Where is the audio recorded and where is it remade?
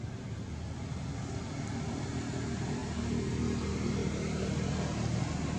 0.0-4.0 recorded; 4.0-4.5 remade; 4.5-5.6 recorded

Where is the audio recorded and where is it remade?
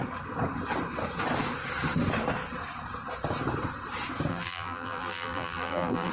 0.0-4.3 recorded; 4.3-6.1 remade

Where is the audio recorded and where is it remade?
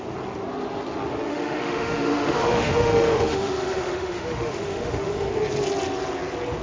0.0-1.3 recorded; 1.3-5.3 remade; 5.3-6.6 recorded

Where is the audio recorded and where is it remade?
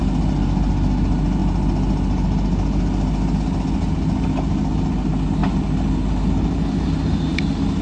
0.0-7.8 recorded